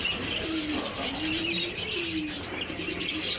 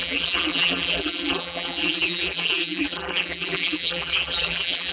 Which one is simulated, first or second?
second